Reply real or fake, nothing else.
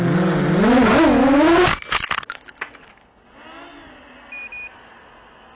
real